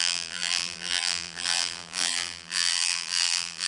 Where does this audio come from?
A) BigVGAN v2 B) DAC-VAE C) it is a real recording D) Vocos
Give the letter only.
A